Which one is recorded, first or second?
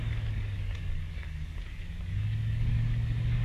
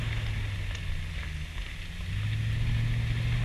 second